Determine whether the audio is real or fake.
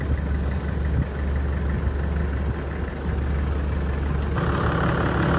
real